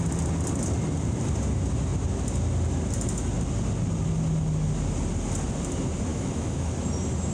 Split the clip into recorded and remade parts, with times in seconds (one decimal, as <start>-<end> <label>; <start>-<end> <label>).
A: 0.0-6.1 recorded; 6.1-6.7 remade; 6.7-7.3 recorded